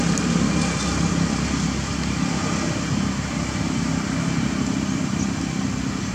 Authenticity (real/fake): fake